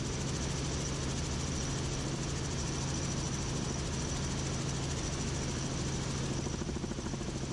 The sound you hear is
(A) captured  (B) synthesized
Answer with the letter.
A